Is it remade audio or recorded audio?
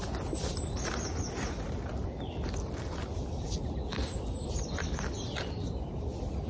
recorded